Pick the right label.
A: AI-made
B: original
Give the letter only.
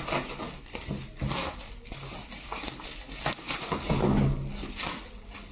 B